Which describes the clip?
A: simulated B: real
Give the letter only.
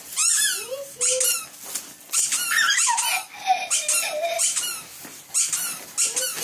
B